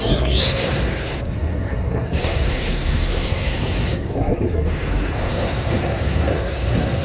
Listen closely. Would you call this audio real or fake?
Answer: fake